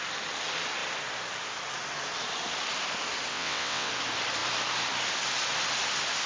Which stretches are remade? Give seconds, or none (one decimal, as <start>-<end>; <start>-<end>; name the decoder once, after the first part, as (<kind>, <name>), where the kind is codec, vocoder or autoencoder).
3.3-3.9 (vocoder, WaveNeXt)